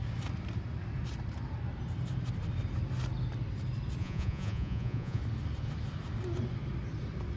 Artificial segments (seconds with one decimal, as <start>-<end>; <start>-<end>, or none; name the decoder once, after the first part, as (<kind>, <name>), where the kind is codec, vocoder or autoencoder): 4.0-5.2 (vocoder, Vocos)